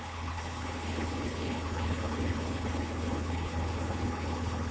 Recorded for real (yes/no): no